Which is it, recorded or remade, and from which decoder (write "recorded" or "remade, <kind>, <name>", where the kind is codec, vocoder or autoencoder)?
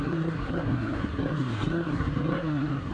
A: remade, codec, SNAC